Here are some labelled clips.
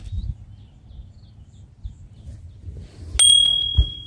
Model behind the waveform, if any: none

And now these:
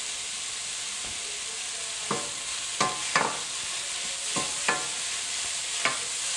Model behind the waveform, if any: none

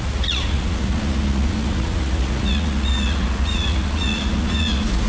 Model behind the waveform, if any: vocoder, Vocos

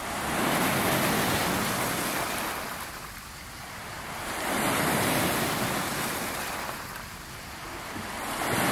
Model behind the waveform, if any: none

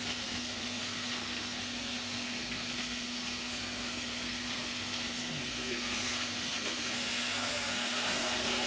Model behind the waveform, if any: codec, SNAC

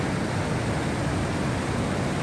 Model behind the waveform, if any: none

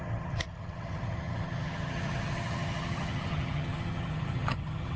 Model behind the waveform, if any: vocoder, HiFi-GAN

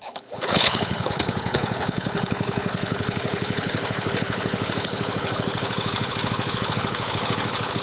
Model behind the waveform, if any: codec, HILCodec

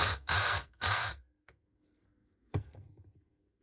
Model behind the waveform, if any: codec, SNAC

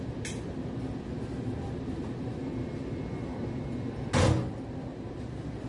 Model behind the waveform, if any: none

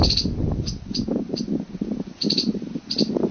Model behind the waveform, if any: none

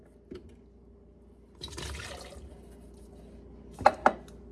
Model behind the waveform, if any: none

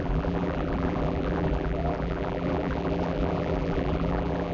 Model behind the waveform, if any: vocoder, BigVGAN v2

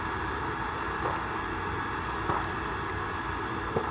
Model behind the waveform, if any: none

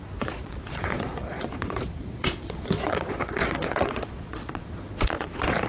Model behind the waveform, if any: vocoder, Vocos